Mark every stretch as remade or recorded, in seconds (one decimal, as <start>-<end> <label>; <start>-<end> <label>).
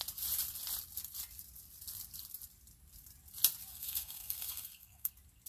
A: 0.0-3.7 recorded; 3.7-5.1 remade; 5.1-5.5 recorded